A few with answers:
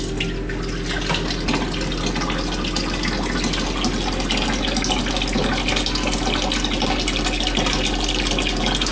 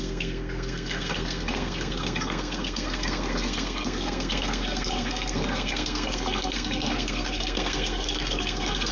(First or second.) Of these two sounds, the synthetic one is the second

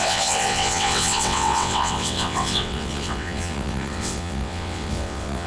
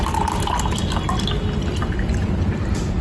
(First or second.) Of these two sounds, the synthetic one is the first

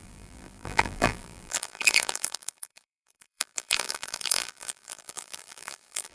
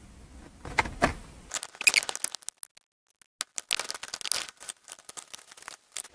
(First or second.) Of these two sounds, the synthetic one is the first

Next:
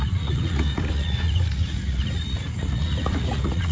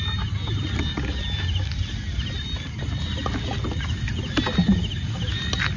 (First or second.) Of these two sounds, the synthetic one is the first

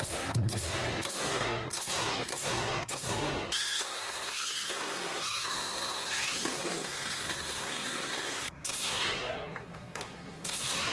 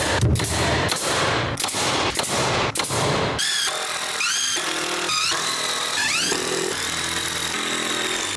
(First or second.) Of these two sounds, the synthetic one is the first